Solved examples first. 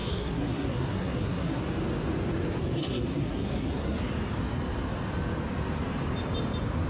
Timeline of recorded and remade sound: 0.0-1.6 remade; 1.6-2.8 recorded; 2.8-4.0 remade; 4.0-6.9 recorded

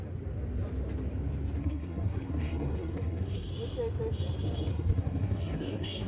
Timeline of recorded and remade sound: 0.0-1.6 recorded; 1.6-3.5 remade; 3.5-4.7 recorded; 4.7-6.1 remade